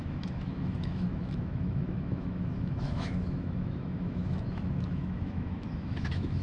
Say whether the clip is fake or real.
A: fake